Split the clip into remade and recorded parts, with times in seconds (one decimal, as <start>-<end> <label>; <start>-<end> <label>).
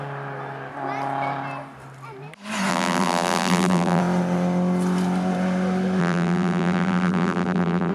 0.0-2.7 recorded; 2.7-4.0 remade; 4.0-6.0 recorded; 6.0-7.9 remade